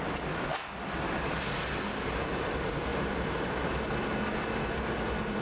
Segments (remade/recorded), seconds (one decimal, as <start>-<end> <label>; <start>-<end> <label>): 0.0-0.5 recorded; 0.5-1.4 remade; 1.4-2.9 recorded; 2.9-3.9 remade; 3.9-5.4 recorded